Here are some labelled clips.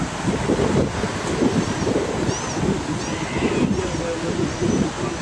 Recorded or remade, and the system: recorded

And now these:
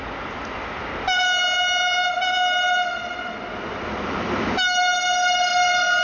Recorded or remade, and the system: recorded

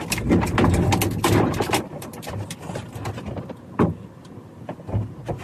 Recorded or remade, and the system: recorded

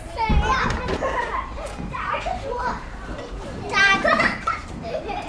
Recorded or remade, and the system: remade, vocoder, BigVGAN v2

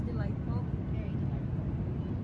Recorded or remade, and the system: remade, vocoder, BigVGAN v2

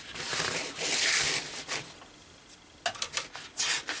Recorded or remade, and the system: recorded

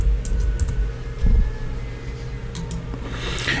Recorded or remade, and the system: recorded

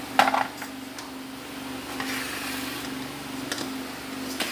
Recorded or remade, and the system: recorded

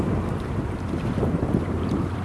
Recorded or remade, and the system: remade, vocoder, BigVGAN v2